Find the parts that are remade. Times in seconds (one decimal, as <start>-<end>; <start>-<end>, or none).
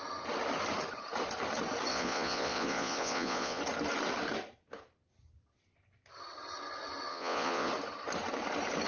1.9-3.6; 7.1-7.7